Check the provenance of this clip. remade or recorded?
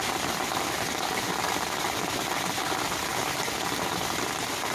recorded